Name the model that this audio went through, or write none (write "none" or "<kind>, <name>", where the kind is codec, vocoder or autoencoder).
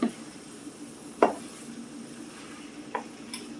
none